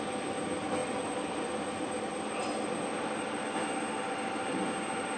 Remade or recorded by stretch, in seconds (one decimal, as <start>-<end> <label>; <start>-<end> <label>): 0.0-5.2 recorded